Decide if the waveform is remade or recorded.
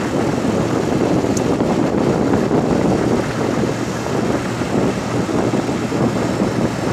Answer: recorded